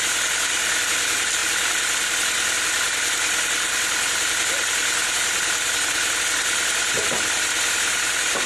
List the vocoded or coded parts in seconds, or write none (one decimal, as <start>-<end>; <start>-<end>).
none